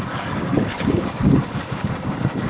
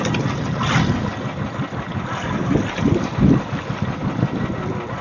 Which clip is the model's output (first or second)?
first